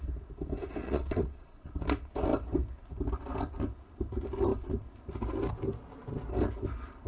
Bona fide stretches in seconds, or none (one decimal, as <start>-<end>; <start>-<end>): 0.0-0.8; 1.7-7.1